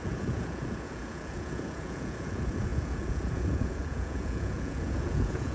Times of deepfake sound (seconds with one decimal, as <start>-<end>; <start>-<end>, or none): 0.0-5.5